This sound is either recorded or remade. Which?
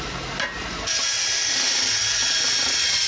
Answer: recorded